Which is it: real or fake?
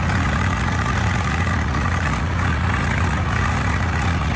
fake